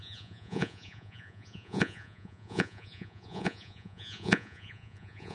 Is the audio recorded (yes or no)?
no